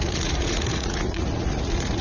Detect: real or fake fake